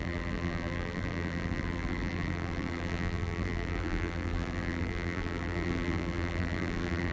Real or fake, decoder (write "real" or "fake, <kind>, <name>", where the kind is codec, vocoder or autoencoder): fake, vocoder, BigVGAN v2